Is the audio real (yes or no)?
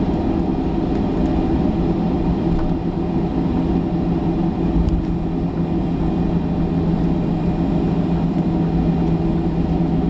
yes